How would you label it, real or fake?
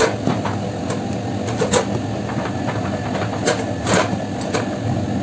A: real